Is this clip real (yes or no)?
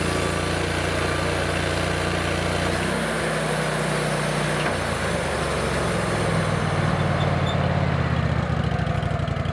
yes